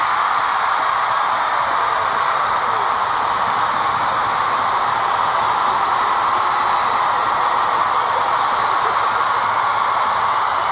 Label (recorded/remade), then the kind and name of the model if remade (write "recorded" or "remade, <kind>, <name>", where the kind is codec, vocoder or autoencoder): recorded